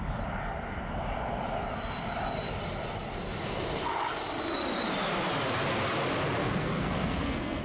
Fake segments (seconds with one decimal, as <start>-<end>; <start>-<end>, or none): 6.4-7.6